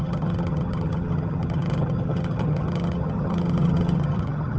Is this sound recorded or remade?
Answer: remade